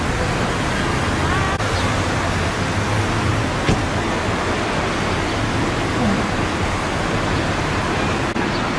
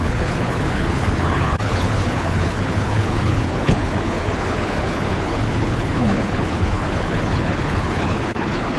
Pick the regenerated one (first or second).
second